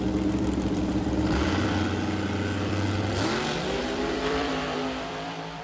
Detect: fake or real fake